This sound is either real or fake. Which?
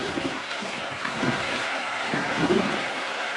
fake